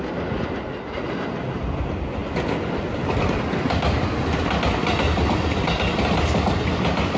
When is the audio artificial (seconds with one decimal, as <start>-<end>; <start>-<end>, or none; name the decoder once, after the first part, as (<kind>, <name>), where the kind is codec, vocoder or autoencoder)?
none